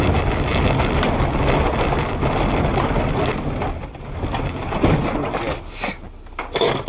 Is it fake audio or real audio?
real